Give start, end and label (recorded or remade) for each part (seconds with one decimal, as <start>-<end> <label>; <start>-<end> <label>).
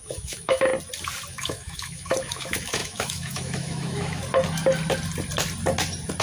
0.0-0.7 remade; 0.7-1.3 recorded; 1.3-4.2 remade; 4.2-6.2 recorded